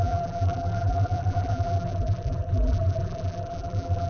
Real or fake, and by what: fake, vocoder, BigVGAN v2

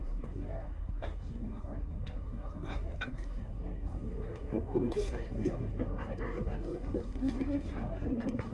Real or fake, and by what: fake, codec, SNAC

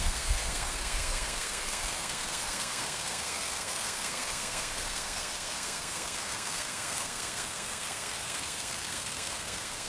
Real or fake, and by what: fake, codec, SNAC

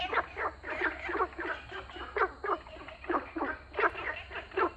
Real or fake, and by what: real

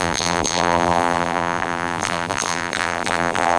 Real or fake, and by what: fake, vocoder, BigVGAN v2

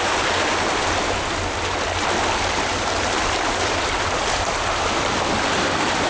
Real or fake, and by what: real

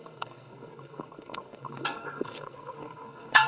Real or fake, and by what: fake, codec, SNAC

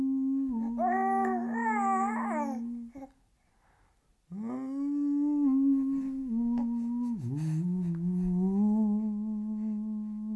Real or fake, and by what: real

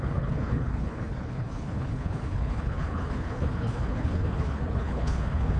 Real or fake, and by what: fake, codec, HILCodec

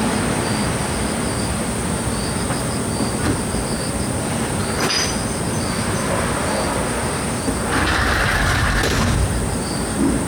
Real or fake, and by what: real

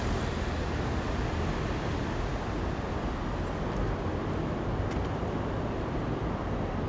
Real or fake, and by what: real